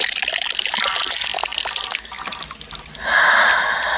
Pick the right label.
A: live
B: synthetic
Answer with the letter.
A